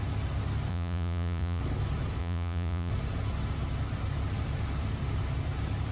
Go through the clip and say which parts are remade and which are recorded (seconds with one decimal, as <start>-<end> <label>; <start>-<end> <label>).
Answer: 0.0-0.7 recorded; 0.7-1.6 remade; 1.6-2.2 recorded; 2.2-2.9 remade; 2.9-5.9 recorded